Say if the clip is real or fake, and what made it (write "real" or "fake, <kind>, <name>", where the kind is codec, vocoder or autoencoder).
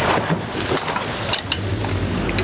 real